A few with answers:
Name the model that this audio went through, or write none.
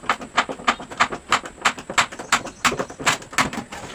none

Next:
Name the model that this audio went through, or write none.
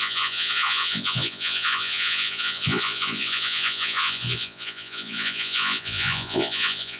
vocoder, Vocos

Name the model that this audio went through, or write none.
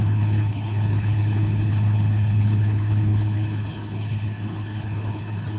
codec, HILCodec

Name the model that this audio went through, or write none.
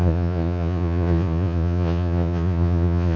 vocoder, Vocos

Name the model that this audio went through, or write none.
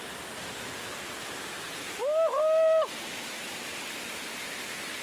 none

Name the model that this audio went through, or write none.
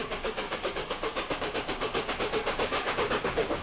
codec, DAC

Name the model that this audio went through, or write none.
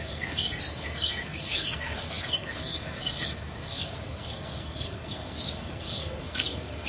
codec, SNAC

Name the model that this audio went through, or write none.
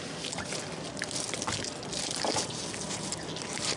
none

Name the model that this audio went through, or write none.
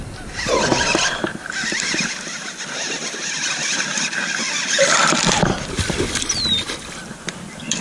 vocoder, BigVGAN v2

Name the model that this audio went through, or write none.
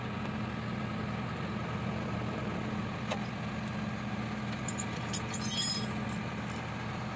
none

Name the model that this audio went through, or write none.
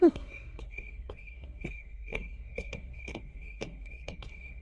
codec, SNAC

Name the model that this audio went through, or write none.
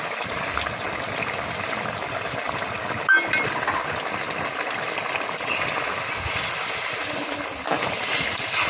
none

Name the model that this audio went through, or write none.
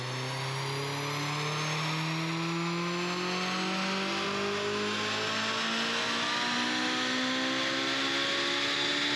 none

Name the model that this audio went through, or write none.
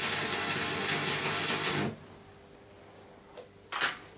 none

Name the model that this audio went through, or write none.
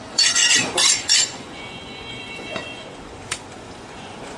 vocoder, Vocos